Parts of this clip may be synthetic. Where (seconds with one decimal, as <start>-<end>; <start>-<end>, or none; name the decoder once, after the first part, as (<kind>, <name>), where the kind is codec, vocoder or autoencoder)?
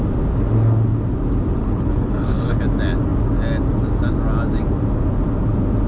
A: 1.6-2.6 (codec, HILCodec)